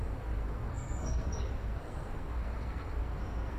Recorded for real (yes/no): no